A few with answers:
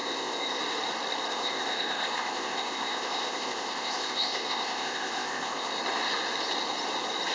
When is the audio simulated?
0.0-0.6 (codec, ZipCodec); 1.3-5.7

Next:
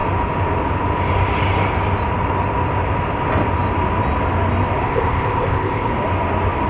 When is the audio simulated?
4.8-5.9 (codec, ZipCodec)